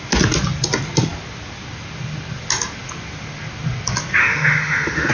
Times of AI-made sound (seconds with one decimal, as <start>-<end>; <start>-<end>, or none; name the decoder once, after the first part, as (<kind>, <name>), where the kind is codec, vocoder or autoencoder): 4.2-5.1 (autoencoder, DAC-VAE)